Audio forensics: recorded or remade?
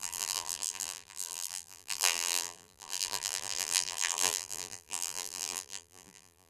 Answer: remade